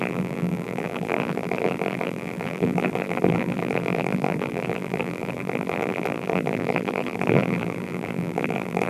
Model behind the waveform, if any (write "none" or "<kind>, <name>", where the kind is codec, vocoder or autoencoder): vocoder, BigVGAN v2